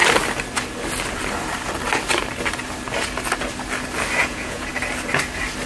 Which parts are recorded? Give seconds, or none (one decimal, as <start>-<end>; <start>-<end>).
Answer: 0.0-4.2; 4.7-5.7